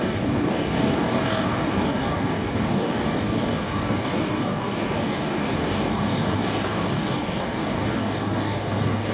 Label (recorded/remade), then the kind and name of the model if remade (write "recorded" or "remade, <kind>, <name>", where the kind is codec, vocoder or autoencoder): remade, codec, DAC